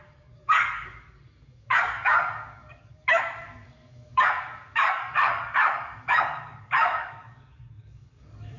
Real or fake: fake